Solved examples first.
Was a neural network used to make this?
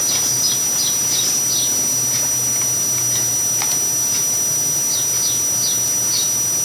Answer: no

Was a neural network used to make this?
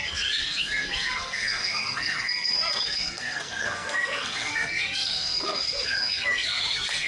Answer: yes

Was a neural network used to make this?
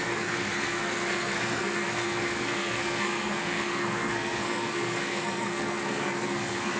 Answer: yes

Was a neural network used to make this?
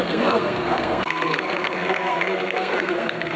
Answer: yes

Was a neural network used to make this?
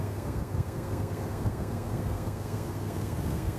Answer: yes